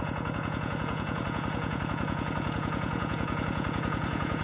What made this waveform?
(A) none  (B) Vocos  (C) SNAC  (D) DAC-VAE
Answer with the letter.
B